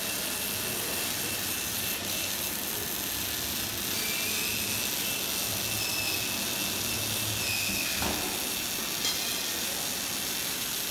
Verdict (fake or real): real